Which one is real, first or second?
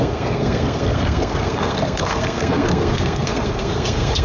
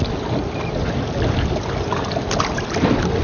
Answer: second